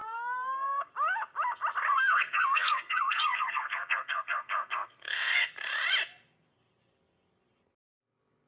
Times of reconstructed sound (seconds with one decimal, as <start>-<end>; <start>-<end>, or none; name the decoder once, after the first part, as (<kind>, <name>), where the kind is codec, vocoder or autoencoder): 0.0-0.9 (codec, SNAC); 1.9-5.5